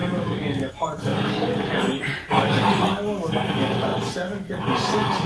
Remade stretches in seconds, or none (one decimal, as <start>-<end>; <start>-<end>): 0.0-0.7